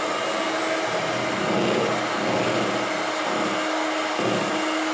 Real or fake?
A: real